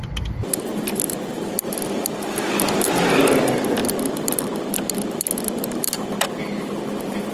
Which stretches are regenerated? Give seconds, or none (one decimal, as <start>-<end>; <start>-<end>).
none